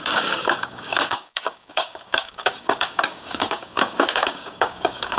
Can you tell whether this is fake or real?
fake